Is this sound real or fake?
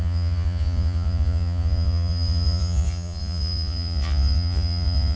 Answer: fake